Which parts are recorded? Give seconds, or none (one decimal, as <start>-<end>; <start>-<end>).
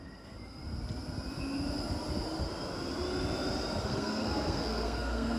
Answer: 0.6-3.8